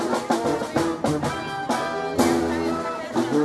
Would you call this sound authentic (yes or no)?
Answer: yes